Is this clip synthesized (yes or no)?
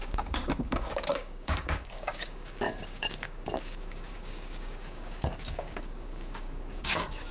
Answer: yes